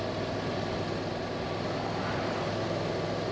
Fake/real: real